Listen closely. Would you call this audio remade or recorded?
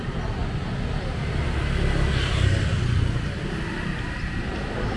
recorded